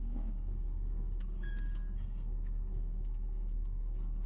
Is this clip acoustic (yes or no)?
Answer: no